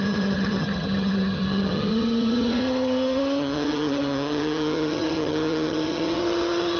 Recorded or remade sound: remade